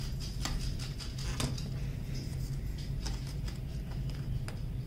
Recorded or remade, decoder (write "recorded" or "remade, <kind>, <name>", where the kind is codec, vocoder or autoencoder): recorded